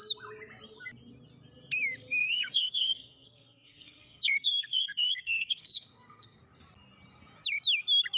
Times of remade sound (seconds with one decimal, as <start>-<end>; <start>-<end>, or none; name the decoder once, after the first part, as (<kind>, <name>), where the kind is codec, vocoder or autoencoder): 2.2-6.4 (codec, SNAC)